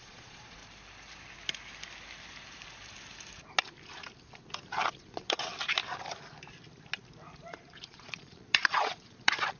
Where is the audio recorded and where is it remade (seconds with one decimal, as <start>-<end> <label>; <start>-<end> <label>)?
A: 0.0-0.6 remade; 0.6-4.9 recorded; 4.9-5.5 remade; 5.5-7.5 recorded; 7.5-9.6 remade